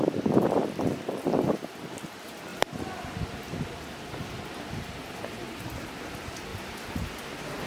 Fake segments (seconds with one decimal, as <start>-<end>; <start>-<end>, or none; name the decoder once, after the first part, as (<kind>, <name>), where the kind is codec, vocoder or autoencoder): 0.0-5.0 (vocoder, BigVGAN v2); 5.6-6.5